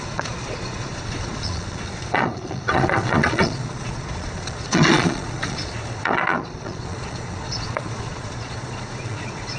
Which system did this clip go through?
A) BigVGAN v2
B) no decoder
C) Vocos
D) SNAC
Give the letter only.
C